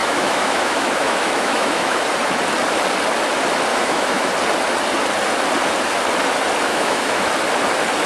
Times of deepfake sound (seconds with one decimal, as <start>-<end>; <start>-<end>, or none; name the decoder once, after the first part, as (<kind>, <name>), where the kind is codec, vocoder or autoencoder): 0.0-2.0 (autoencoder, DAC-VAE); 3.7-4.3; 6.7-7.3